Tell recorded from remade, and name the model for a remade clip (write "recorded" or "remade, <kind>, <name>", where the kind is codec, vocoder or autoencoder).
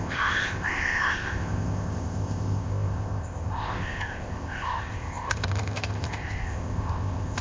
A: remade, codec, ZipCodec